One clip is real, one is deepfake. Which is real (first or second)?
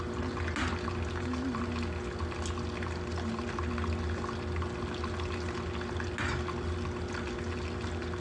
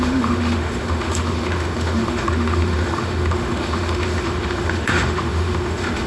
first